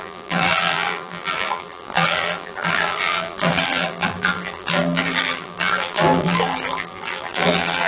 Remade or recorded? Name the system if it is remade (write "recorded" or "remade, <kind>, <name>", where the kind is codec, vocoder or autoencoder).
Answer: remade, vocoder, BigVGAN v2